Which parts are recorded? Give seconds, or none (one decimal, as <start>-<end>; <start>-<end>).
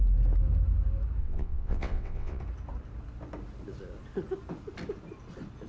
0.0-1.2; 2.4-5.7